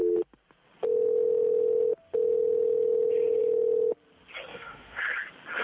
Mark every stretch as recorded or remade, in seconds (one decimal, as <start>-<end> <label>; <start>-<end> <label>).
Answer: 0.0-4.5 recorded; 4.5-5.0 remade; 5.0-5.6 recorded